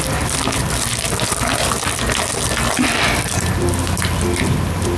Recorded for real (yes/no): yes